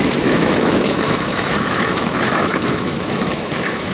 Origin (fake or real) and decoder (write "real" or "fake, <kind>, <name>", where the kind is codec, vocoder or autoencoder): fake, autoencoder, DAC-VAE